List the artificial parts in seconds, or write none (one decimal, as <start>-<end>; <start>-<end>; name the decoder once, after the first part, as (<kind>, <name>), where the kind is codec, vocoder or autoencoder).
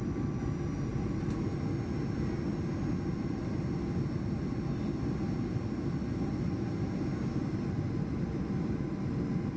none